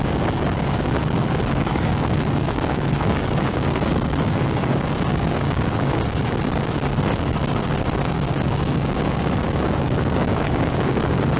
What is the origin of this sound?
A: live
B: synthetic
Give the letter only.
B